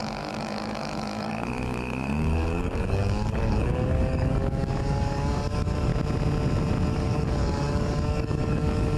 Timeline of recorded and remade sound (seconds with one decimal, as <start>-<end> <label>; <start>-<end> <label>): 0.0-5.9 remade; 5.9-6.9 recorded; 6.9-9.0 remade